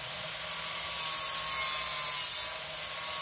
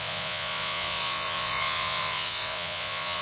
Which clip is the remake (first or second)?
second